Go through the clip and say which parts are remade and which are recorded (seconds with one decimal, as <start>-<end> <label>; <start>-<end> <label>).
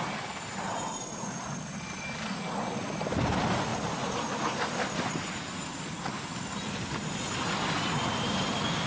0.0-8.9 recorded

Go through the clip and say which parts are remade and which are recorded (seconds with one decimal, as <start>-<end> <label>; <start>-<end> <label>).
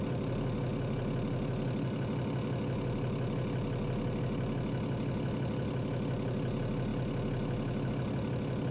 0.0-8.7 recorded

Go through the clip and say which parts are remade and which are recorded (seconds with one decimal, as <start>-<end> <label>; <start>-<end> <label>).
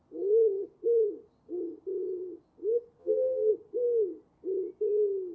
0.0-3.0 recorded; 3.0-3.5 remade; 3.5-5.3 recorded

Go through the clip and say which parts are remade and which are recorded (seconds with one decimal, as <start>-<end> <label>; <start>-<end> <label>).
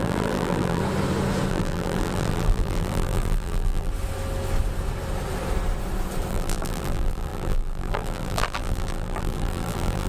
0.0-0.8 remade; 0.8-1.5 recorded; 1.5-3.9 remade; 3.9-6.3 recorded; 6.3-10.1 remade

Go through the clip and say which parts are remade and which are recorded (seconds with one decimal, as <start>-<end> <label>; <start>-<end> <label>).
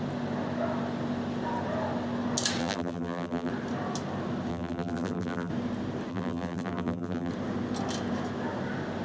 0.0-2.6 recorded; 2.6-3.5 remade; 3.5-4.5 recorded; 4.5-5.5 remade; 5.5-6.1 recorded; 6.1-7.3 remade; 7.3-9.0 recorded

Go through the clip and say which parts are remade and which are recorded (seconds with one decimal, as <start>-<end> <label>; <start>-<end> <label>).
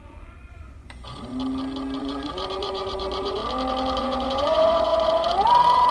0.0-1.3 remade; 1.3-2.0 recorded; 2.0-3.4 remade; 3.4-4.0 recorded; 4.0-5.9 remade